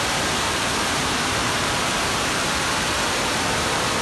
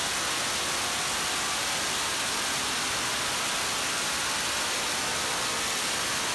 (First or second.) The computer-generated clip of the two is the first